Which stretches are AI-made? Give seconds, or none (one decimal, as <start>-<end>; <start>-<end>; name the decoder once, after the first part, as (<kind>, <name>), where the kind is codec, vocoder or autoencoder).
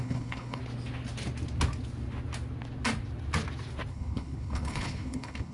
0.0-0.6 (codec, HILCodec); 3.9-5.5